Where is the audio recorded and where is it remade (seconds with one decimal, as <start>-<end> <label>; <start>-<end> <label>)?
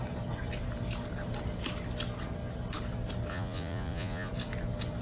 0.0-3.3 recorded; 3.3-4.3 remade; 4.3-5.0 recorded